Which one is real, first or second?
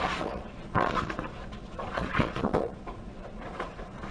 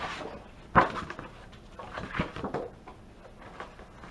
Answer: second